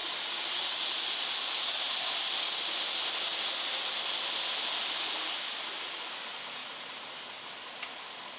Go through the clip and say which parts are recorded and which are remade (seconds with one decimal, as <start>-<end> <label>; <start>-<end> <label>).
0.0-1.0 remade; 1.0-6.6 recorded; 6.6-7.4 remade; 7.4-8.4 recorded

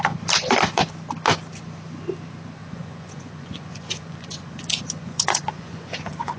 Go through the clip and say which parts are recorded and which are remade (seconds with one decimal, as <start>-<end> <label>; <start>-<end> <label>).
0.0-2.6 recorded; 2.6-6.4 remade